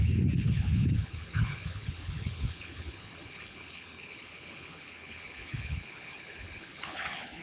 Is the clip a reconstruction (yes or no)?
yes